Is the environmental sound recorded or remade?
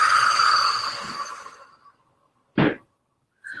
remade